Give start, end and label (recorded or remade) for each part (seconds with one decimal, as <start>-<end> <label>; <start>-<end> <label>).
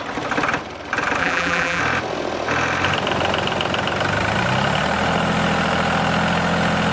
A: 0.0-1.2 recorded; 1.2-1.8 remade; 1.8-6.9 recorded